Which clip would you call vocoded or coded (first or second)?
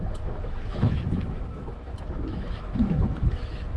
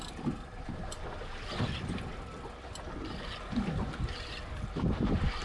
first